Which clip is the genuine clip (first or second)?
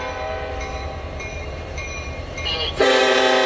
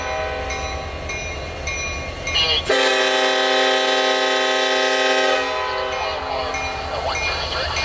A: second